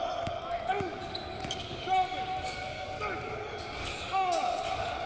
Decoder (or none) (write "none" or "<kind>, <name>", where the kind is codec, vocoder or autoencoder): codec, DAC